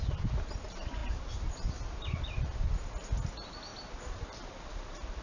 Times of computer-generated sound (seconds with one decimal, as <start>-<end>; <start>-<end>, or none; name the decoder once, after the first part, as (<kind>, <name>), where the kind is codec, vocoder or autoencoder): none